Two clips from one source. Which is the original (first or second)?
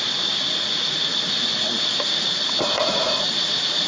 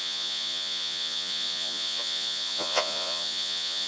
first